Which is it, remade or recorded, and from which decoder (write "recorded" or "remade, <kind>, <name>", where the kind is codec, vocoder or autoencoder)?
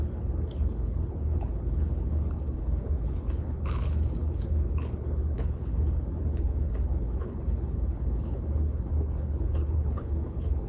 remade, codec, HILCodec